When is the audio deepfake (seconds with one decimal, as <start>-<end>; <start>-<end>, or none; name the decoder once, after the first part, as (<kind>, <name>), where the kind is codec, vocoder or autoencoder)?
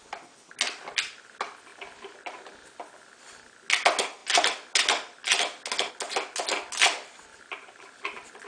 1.7-2.7 (vocoder, BigVGAN v2); 7.3-8.0